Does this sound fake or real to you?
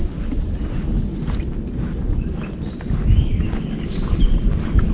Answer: real